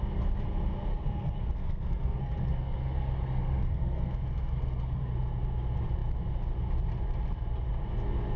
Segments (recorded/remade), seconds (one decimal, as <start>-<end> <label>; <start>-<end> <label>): 0.0-0.9 recorded; 0.9-5.1 remade; 5.1-8.4 recorded